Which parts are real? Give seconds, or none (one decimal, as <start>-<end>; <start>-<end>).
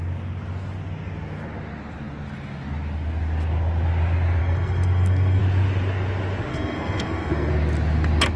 0.0-4.4; 5.4-6.5; 7.5-8.4